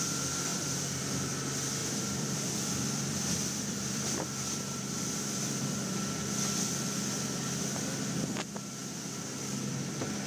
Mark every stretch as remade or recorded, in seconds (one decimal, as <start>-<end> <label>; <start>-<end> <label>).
0.0-0.5 recorded; 0.5-1.0 remade; 1.0-1.8 recorded; 1.8-6.2 remade; 6.2-10.3 recorded